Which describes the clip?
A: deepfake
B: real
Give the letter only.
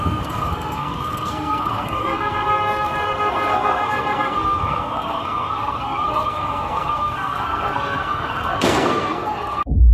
A